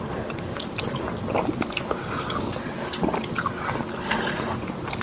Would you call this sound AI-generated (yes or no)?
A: no